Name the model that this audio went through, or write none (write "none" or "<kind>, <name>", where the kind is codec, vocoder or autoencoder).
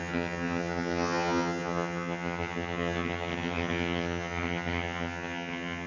vocoder, HiFi-GAN